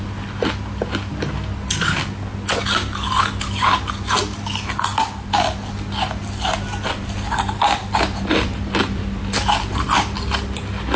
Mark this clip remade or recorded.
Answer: recorded